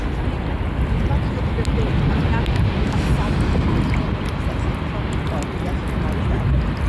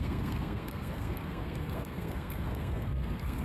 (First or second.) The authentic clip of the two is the first